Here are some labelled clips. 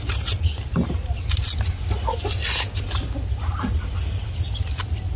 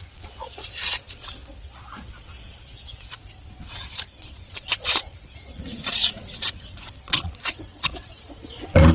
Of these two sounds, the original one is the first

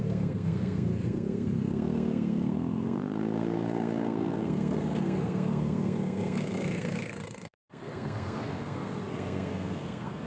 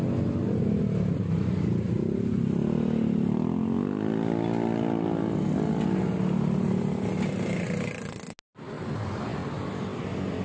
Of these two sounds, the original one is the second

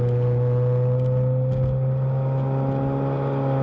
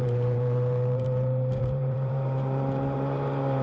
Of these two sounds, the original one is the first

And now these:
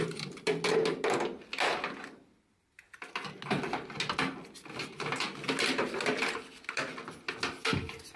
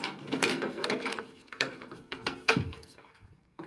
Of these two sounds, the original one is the first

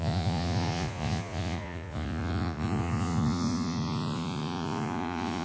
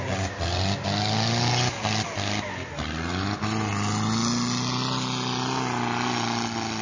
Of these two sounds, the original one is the second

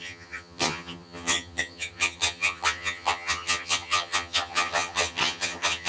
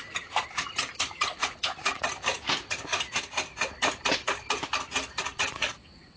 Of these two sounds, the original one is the second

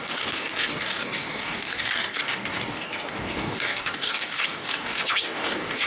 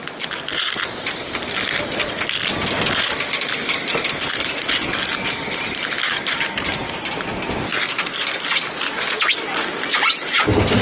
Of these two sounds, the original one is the second